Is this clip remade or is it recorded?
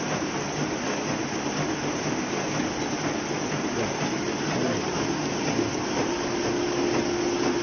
recorded